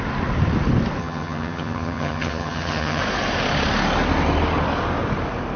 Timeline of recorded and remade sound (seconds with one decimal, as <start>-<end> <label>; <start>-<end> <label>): 0.0-1.0 recorded; 1.0-3.0 remade; 3.0-5.6 recorded